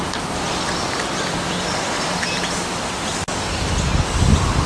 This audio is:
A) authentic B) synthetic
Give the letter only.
A